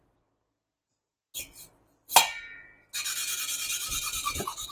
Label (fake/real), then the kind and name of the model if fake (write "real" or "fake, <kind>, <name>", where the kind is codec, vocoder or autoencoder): real